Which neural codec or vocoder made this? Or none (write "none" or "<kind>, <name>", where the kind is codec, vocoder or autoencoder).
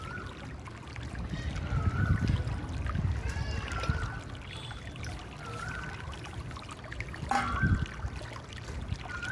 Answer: none